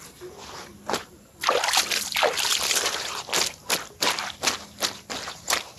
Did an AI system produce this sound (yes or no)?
no